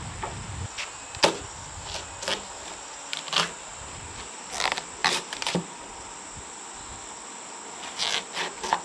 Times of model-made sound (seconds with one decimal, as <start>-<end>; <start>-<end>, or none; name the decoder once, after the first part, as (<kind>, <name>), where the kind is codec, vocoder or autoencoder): 5.0-5.6 (vocoder, BigVGAN v2)